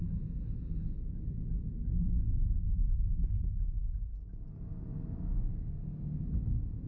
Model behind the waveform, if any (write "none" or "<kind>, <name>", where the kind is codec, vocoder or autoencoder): none